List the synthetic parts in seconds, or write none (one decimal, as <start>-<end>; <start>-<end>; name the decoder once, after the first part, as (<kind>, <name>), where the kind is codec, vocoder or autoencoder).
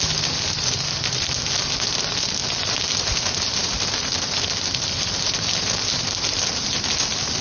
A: none